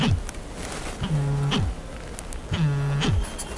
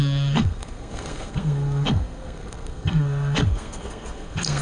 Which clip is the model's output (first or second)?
second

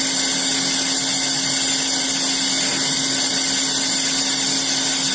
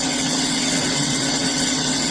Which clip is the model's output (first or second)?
second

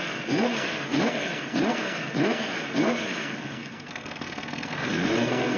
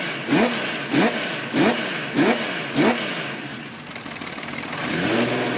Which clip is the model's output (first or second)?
first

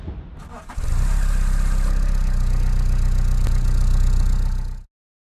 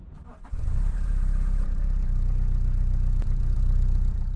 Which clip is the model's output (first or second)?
second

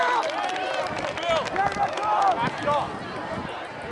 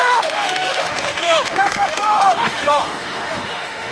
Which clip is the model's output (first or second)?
second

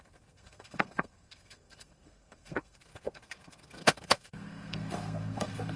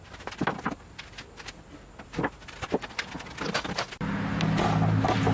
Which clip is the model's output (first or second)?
first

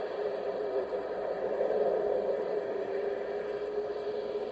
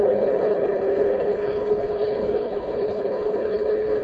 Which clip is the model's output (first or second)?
second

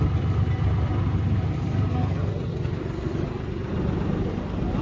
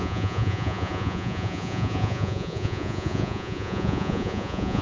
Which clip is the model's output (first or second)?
second